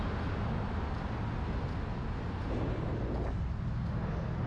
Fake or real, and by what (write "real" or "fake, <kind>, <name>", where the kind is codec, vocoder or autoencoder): real